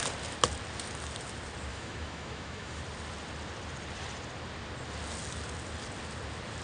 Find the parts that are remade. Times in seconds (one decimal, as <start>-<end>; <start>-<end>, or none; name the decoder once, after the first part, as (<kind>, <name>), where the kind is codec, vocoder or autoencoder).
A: 1.7-2.8 (autoencoder, DAC-VAE)